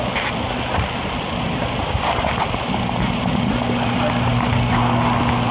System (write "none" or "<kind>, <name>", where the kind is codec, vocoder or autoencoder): none